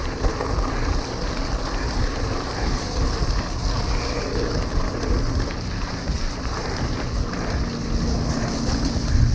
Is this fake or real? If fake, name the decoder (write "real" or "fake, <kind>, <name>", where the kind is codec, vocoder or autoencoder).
real